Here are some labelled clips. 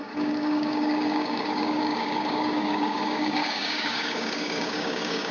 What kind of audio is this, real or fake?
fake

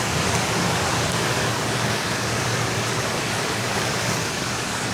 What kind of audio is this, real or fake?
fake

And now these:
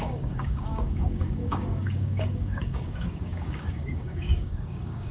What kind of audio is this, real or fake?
fake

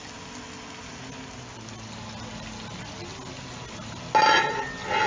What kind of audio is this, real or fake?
real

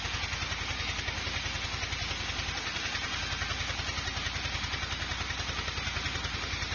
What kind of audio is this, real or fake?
real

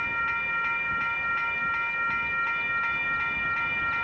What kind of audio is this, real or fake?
real